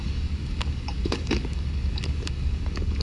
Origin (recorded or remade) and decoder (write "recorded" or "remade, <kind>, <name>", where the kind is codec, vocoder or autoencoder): remade, codec, DAC